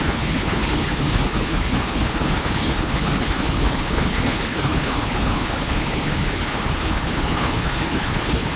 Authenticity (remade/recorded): remade